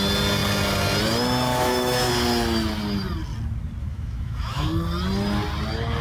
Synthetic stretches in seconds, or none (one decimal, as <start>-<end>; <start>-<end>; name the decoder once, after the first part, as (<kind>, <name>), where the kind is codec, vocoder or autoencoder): 1.5-2.1 (autoencoder, DAC-VAE); 3.8-4.7